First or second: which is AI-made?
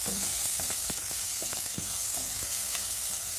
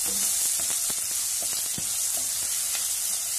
first